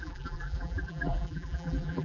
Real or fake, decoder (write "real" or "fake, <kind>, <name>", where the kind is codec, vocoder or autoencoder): fake, vocoder, BigVGAN v2